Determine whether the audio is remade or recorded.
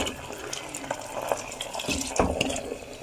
recorded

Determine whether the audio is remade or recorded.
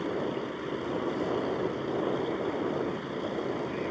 recorded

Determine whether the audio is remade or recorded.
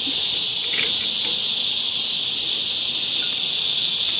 recorded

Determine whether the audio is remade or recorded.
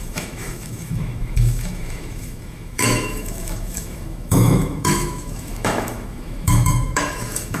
remade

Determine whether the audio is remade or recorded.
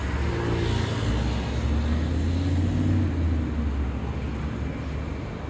recorded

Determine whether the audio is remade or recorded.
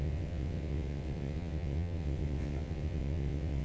remade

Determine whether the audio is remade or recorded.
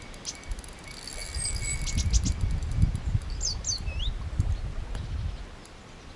recorded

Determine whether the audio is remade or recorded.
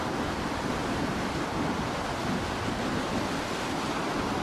recorded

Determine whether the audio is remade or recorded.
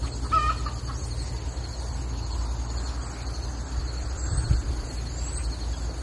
recorded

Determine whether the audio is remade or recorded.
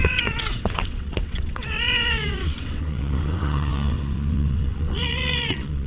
remade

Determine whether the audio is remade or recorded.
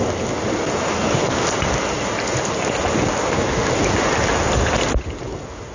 recorded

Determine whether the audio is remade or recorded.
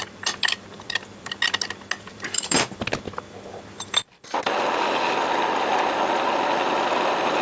recorded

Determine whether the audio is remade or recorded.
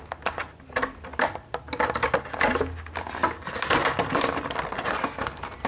recorded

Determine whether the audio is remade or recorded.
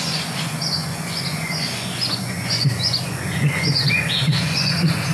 remade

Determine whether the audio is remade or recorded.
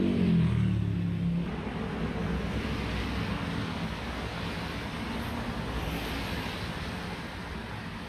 recorded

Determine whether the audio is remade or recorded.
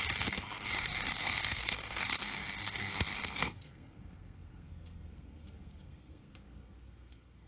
remade